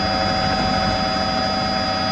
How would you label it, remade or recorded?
recorded